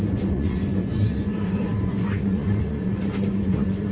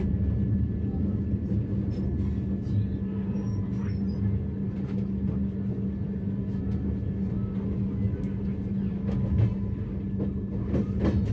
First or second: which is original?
second